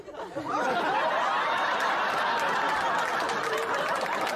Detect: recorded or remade recorded